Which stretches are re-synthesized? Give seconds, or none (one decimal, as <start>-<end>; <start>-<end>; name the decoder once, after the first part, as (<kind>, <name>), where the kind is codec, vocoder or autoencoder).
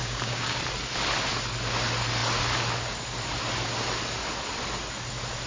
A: 0.0-0.6 (codec, DAC)